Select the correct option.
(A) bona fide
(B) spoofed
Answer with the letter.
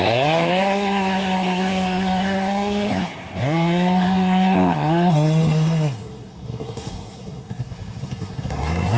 B